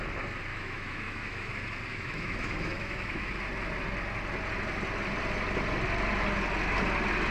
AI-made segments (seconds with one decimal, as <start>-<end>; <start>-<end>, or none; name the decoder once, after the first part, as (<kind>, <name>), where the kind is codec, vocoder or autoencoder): 0.5-1.5 (autoencoder, DAC-VAE); 1.9-3.3